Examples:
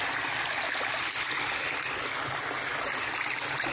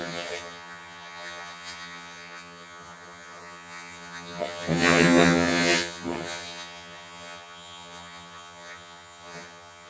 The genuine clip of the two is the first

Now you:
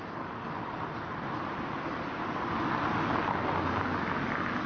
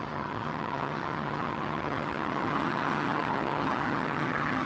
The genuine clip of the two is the first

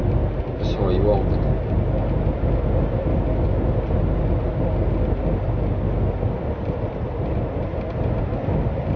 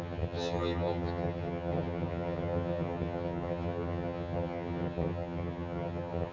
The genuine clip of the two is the first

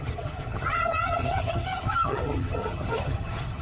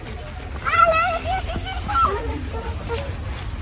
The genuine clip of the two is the second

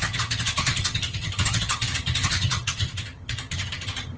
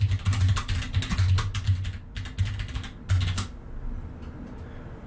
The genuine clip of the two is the second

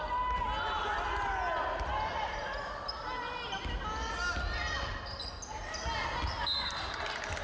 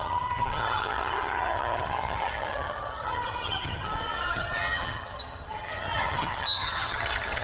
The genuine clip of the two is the first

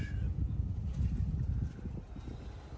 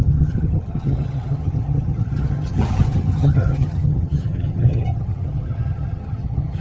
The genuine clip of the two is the first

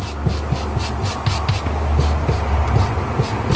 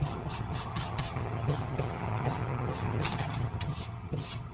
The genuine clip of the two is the first